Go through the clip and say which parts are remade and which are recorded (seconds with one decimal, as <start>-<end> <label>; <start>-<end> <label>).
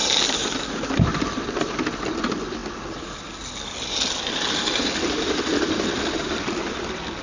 0.0-7.2 recorded